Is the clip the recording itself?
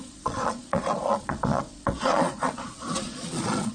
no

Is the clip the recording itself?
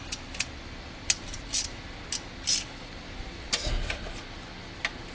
yes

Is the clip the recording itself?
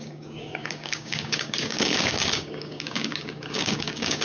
no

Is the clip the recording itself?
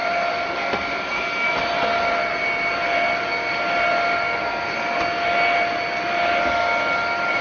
yes